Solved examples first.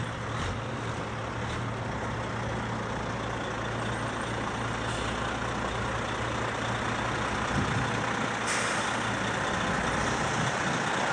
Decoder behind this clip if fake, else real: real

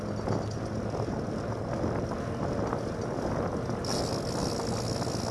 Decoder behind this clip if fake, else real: real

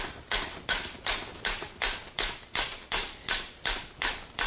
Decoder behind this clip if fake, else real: real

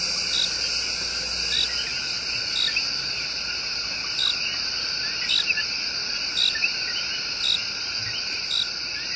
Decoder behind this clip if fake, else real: real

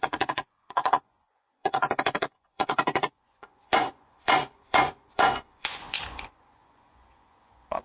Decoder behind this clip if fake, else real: fake, vocoder, Vocos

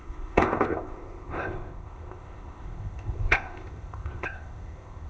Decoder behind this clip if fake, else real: fake, codec, ZipCodec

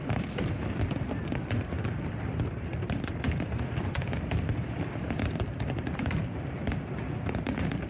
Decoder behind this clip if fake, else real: real